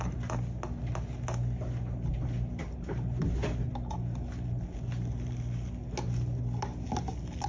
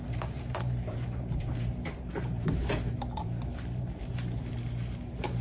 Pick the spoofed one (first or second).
second